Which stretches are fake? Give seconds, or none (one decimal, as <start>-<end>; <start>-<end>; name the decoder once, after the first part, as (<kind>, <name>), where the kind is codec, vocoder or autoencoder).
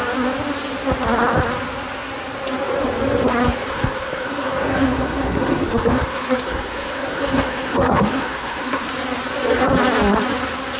3.7-8.9 (codec, SNAC)